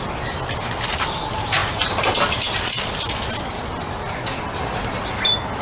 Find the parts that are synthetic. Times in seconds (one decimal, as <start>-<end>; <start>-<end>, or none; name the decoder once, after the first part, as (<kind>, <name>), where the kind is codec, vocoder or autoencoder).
none